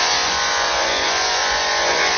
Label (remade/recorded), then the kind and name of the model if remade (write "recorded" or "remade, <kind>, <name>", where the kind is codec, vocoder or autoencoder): remade, vocoder, Vocos